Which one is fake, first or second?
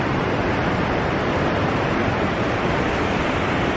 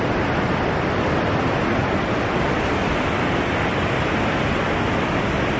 first